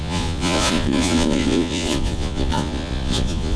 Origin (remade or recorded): remade